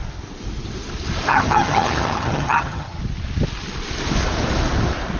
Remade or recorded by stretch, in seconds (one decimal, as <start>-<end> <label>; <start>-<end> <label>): 0.0-1.3 recorded; 1.3-3.0 remade; 3.0-5.2 recorded